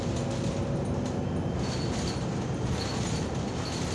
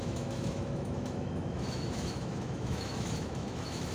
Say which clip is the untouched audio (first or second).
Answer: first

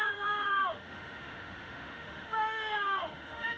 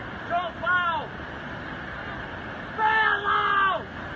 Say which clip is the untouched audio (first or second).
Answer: second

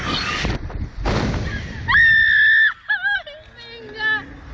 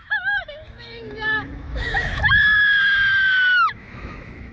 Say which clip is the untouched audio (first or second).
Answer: first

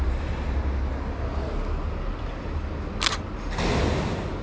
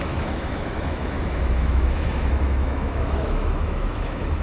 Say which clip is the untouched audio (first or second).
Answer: first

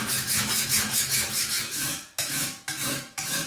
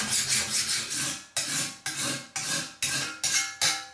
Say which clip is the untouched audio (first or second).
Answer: second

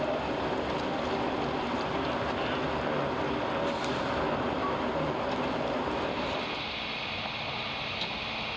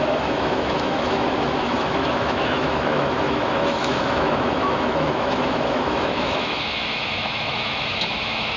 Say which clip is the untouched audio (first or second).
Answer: first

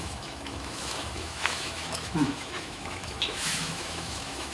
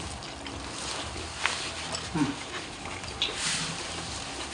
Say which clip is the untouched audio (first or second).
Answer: second